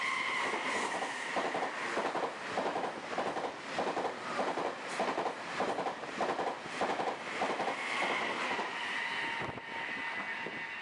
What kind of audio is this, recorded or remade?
recorded